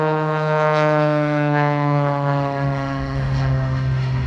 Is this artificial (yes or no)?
yes